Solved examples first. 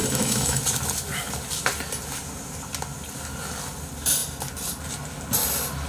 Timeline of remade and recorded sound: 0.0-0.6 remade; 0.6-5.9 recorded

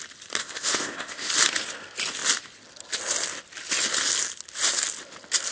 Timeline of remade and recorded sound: 0.0-0.4 recorded; 0.4-1.3 remade; 1.3-5.5 recorded